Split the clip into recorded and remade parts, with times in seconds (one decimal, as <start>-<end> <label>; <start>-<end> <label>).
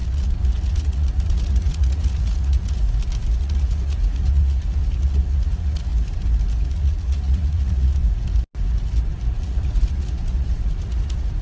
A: 0.0-2.8 remade; 2.8-3.4 recorded; 3.4-5.9 remade; 5.9-6.7 recorded; 6.7-8.0 remade; 8.0-9.3 recorded; 9.3-11.4 remade